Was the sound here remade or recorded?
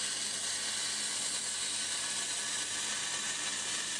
recorded